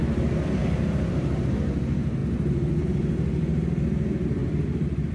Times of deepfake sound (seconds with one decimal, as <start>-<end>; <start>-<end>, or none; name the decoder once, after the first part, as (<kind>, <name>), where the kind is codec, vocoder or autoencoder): 0.6-1.4 (vocoder, BigVGAN v2); 2.2-2.8; 4.4-5.1

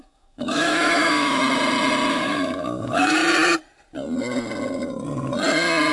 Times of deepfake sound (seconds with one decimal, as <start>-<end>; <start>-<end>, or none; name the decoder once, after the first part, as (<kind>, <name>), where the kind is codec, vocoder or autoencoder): 0.0-1.4 (autoencoder, DAC-VAE); 2.1-3.2

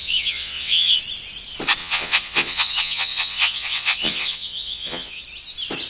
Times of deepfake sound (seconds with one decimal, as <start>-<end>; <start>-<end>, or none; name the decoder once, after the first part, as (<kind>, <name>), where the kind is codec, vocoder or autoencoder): 0.0-1.0 (vocoder, Vocos); 1.8-5.2

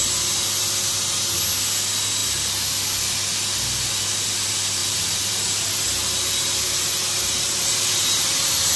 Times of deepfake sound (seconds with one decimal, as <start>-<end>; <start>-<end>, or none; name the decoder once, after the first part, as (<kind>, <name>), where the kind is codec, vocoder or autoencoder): 4.8-8.8 (vocoder, BigVGAN v2)

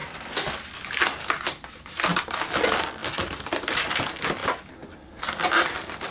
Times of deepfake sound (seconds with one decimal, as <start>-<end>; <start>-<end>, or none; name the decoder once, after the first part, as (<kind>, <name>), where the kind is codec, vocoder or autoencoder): none

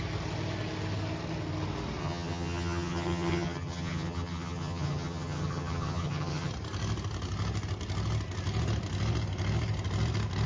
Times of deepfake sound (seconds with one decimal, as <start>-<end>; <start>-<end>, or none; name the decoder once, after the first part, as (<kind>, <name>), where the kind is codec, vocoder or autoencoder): 2.0-6.5 (vocoder, HiFi-GAN)